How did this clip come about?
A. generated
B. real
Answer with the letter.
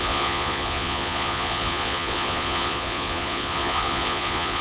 A